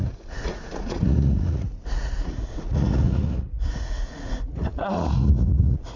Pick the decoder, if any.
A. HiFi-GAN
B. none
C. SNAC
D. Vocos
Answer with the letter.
D